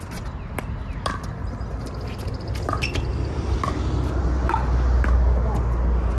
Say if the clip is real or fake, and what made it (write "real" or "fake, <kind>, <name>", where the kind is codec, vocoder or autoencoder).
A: real